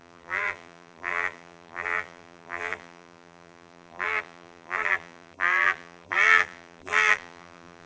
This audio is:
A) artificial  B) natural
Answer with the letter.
A